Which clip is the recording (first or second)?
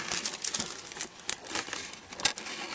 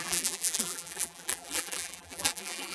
first